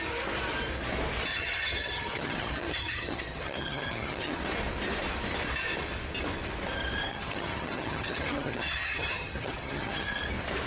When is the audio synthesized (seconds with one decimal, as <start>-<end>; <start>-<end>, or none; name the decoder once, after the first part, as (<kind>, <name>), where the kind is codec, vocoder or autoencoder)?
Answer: 1.3-4.4 (vocoder, HiFi-GAN); 7.1-10.2